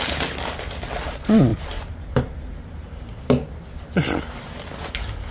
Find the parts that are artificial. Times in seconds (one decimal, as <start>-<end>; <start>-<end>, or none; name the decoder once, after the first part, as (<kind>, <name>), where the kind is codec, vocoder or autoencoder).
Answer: none